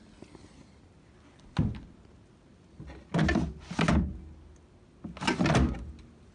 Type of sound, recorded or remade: recorded